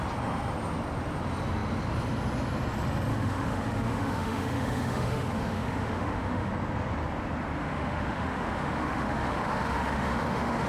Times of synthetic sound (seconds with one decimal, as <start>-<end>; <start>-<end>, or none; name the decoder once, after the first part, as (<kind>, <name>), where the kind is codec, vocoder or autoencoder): 3.1-6.5 (autoencoder, DAC-VAE); 7.6-10.7